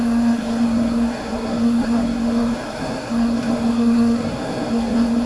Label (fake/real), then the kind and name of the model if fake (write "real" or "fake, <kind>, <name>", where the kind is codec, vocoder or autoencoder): fake, codec, SNAC